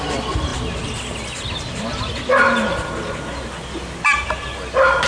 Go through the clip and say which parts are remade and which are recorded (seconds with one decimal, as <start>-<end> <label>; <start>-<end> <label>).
0.0-5.1 recorded

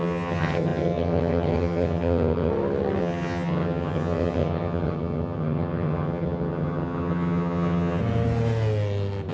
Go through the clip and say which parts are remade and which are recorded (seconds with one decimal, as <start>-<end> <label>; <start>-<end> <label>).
0.0-2.5 remade; 2.5-3.0 recorded; 3.0-8.0 remade; 8.0-9.3 recorded

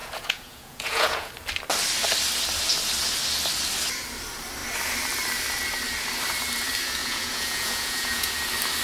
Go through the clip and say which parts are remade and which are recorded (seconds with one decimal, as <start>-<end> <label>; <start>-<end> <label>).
0.0-1.3 remade; 1.3-7.0 recorded; 7.0-8.3 remade; 8.3-8.8 recorded

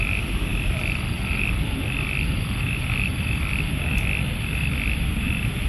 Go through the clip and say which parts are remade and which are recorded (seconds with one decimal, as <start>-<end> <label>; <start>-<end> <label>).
0.0-0.5 recorded; 0.5-3.9 remade; 3.9-5.7 recorded

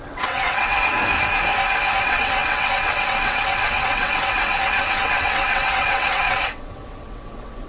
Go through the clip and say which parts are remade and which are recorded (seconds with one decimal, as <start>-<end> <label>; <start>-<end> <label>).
0.0-0.9 remade; 0.9-2.0 recorded; 2.0-7.7 remade

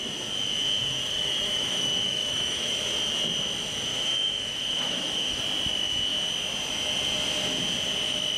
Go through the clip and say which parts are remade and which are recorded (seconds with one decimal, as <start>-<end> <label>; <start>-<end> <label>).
0.0-0.8 recorded; 0.8-2.7 remade; 2.7-3.9 recorded; 3.9-5.4 remade; 5.4-8.4 recorded

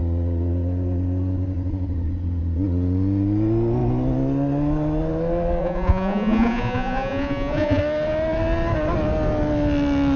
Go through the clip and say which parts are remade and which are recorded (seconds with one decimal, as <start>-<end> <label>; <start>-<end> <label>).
0.0-5.6 recorded; 5.6-7.8 remade; 7.8-10.2 recorded

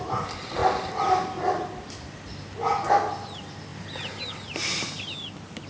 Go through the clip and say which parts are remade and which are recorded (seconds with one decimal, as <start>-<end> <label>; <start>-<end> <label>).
0.0-5.7 recorded